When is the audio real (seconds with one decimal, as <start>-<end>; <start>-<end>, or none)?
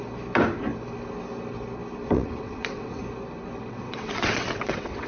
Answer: 0.0-2.1; 3.0-3.6